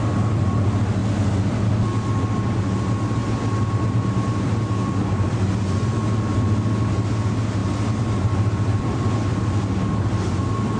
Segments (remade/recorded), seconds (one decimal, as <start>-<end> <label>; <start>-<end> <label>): 0.0-10.8 recorded